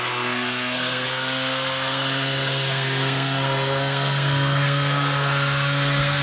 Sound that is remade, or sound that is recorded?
remade